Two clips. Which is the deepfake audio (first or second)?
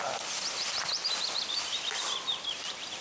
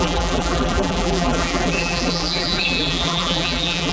second